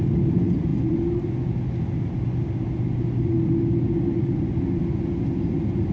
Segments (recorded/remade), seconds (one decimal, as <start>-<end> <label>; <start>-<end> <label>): 0.0-5.9 recorded